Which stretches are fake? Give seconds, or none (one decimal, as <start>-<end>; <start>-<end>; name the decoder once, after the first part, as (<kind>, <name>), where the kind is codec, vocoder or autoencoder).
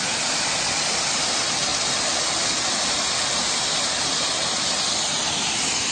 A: none